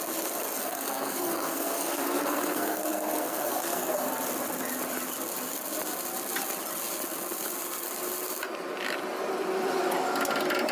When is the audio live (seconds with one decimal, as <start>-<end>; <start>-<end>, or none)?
0.0-0.6; 4.1-10.7